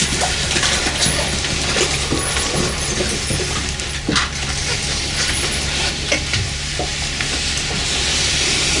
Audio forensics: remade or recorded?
recorded